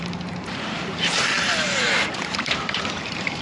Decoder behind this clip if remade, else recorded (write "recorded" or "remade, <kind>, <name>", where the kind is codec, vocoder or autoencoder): remade, vocoder, BigVGAN v2